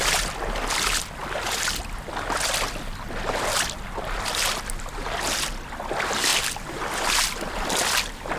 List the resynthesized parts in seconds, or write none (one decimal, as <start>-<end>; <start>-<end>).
6.3-7.1